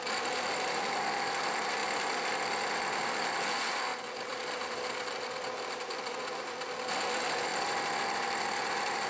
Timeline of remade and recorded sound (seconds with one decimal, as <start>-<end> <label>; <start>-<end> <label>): 0.0-3.9 recorded; 3.9-6.6 remade; 6.6-7.5 recorded; 7.5-9.1 remade